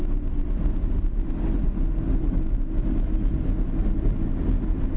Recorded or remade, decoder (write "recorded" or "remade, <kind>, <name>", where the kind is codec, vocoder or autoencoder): recorded